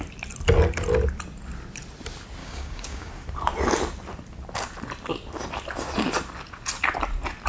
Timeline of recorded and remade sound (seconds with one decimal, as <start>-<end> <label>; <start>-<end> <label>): 0.0-2.4 recorded; 2.4-3.1 remade; 3.1-7.5 recorded

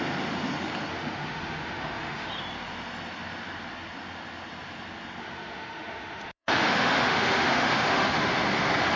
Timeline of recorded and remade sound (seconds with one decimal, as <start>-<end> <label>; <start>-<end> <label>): 0.0-0.9 recorded; 0.9-2.3 remade; 2.3-5.2 recorded; 5.2-8.2 remade; 8.2-9.0 recorded

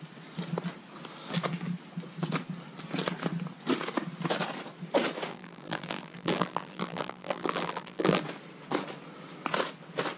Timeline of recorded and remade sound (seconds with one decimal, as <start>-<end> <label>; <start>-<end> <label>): 0.0-5.3 recorded; 5.3-8.2 remade; 8.2-10.2 recorded

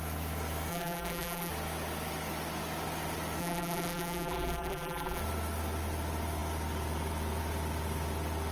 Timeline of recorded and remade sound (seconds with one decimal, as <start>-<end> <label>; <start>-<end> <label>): 0.0-0.7 recorded; 0.7-1.5 remade; 1.5-3.4 recorded; 3.4-5.2 remade; 5.2-8.5 recorded

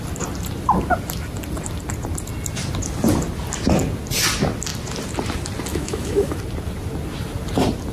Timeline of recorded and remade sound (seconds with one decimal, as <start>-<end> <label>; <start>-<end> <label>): 0.0-5.7 recorded; 5.7-6.4 remade; 6.4-7.9 recorded

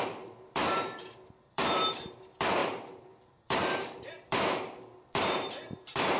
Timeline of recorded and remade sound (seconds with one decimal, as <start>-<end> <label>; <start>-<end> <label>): 0.0-6.2 remade

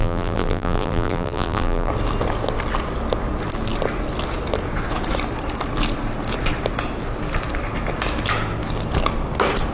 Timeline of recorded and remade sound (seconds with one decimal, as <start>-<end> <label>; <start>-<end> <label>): 0.0-1.9 remade; 1.9-9.7 recorded

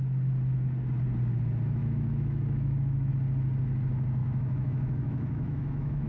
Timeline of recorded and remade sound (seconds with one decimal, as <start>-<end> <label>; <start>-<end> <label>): 0.0-1.8 recorded; 1.8-3.1 remade; 3.1-4.2 recorded; 4.2-6.1 remade